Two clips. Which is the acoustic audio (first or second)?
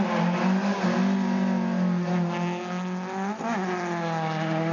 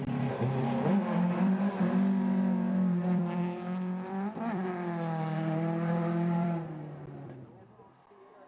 first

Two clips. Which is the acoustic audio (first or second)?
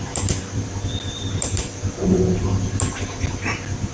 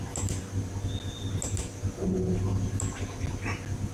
second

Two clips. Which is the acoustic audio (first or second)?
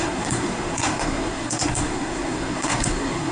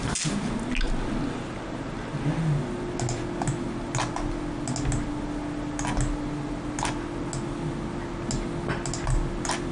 second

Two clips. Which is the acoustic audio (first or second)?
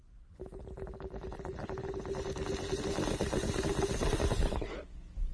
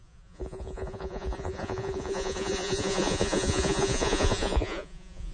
first